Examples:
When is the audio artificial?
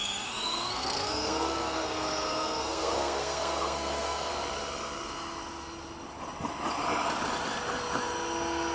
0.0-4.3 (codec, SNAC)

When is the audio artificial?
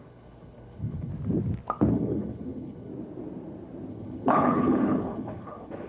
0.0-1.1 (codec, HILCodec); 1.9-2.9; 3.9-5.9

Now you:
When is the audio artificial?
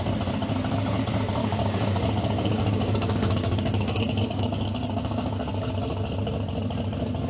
1.4-5.7 (codec, DAC)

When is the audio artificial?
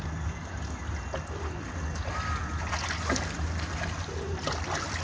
none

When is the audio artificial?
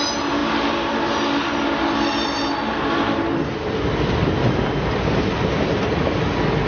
none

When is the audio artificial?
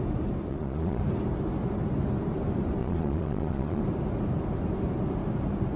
0.5-1.0 (vocoder, Vocos); 2.8-3.8